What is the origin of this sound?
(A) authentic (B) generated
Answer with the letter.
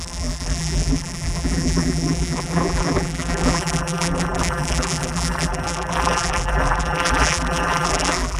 B